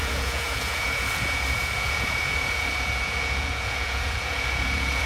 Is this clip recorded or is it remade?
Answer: remade